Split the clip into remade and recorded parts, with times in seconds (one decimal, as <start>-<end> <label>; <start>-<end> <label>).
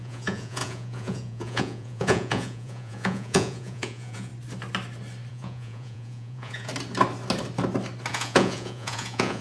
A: 0.0-4.3 remade; 4.3-5.3 recorded; 5.3-6.7 remade; 6.7-8.1 recorded; 8.1-9.4 remade